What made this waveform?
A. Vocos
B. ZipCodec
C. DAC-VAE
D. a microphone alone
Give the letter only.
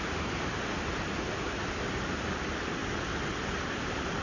D